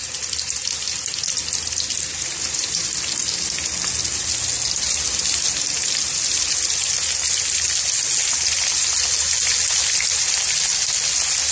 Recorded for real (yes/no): yes